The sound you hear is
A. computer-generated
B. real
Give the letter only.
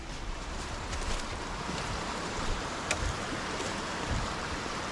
A